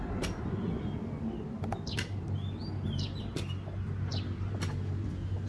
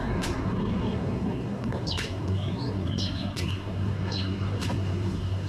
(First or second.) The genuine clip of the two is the first